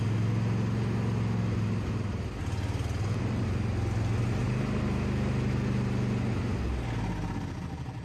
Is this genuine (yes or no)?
yes